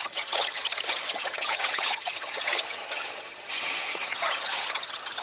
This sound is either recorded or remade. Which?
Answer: remade